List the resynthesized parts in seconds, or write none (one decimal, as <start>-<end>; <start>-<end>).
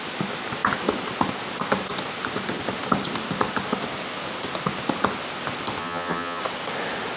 5.8-6.4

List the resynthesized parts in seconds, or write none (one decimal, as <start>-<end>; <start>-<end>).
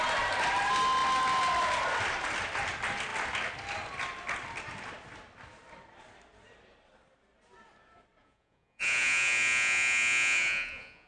8.2-11.1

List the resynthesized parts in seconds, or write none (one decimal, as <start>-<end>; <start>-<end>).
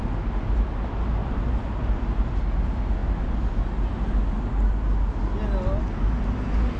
none